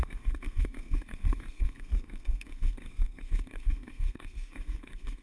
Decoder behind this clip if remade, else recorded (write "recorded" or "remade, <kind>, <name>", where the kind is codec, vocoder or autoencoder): remade, codec, SNAC